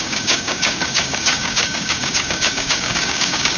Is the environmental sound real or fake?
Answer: fake